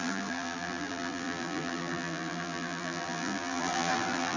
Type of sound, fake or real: fake